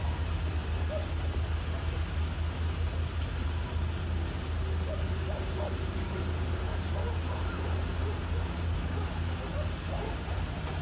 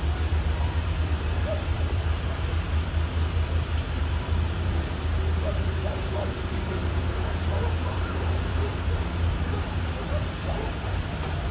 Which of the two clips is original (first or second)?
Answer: first